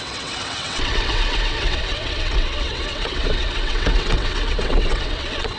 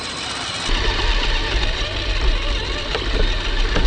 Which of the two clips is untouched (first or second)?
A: second